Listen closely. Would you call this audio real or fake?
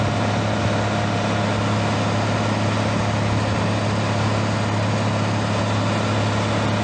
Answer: real